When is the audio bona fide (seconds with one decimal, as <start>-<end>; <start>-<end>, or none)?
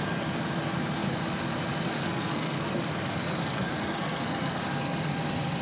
0.0-2.0; 2.7-3.5; 4.6-5.6